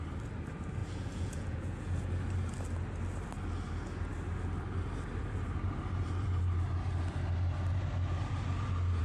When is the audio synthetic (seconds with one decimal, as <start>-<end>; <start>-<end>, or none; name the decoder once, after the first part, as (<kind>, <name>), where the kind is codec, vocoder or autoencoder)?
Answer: 0.8-2.1 (vocoder, Vocos)